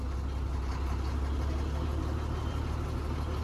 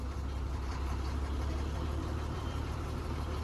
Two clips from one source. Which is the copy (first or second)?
second